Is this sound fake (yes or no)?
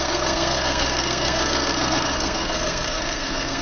yes